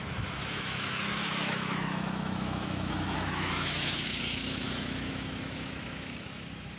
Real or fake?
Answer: fake